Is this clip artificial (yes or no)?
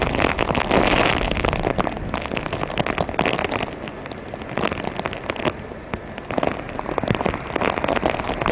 no